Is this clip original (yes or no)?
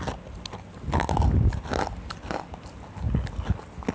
yes